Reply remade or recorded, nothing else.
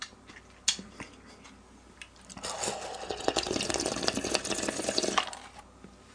recorded